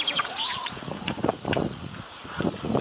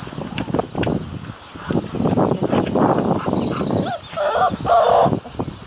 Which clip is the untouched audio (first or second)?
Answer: second